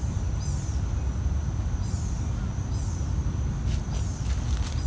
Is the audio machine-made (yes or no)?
no